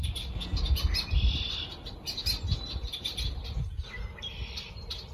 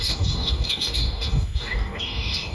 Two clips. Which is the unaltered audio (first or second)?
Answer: first